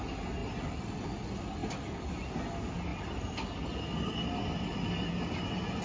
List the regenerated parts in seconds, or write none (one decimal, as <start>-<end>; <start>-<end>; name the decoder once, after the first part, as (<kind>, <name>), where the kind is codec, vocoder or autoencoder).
none